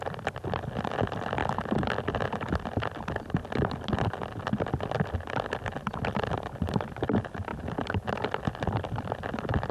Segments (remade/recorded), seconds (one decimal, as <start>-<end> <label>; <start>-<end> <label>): 0.0-9.7 recorded